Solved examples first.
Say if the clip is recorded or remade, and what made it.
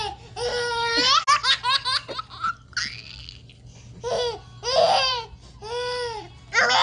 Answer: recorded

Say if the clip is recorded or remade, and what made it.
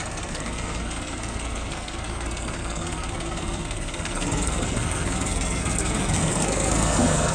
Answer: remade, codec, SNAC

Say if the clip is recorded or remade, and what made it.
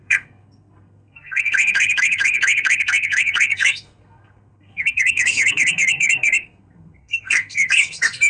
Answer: remade, codec, SNAC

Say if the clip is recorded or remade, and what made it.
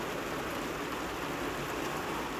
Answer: recorded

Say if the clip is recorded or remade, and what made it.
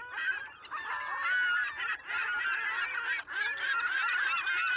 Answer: recorded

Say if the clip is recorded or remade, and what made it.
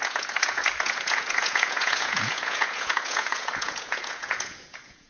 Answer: remade, vocoder, Vocos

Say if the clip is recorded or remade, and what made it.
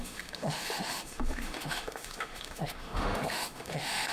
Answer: remade, autoencoder, DAC-VAE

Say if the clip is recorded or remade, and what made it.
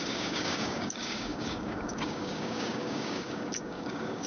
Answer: remade, codec, DAC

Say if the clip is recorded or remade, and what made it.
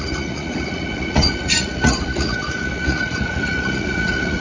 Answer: remade, vocoder, Vocos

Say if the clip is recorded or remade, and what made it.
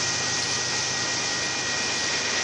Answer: recorded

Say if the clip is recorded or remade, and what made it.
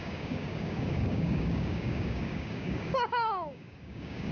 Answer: remade, codec, DAC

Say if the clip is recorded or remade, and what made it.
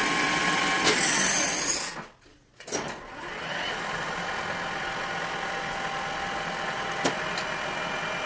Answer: recorded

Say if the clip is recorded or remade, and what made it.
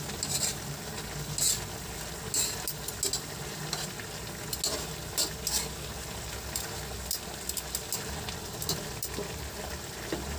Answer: recorded